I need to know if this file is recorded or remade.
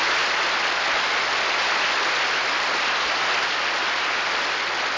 recorded